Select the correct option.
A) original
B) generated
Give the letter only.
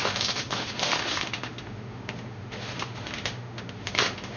B